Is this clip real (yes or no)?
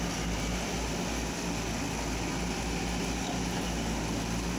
yes